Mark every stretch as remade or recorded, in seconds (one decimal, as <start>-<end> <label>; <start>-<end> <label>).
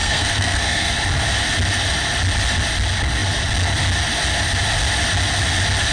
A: 0.0-0.9 remade; 0.9-5.9 recorded